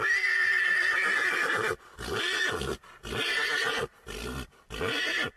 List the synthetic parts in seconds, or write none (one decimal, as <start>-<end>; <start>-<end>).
none